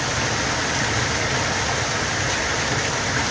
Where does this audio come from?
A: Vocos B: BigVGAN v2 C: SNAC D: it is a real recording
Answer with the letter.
D